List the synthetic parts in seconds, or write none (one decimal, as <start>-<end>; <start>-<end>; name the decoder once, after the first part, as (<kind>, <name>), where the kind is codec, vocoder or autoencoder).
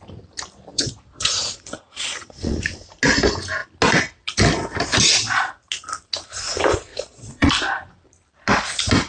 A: 0.7-2.6 (vocoder, Vocos); 6.9-7.5